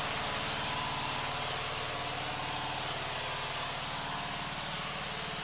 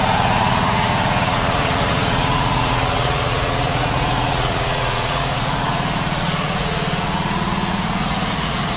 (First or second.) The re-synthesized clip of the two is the second